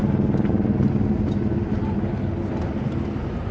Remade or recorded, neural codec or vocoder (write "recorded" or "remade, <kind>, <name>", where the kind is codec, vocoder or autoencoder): recorded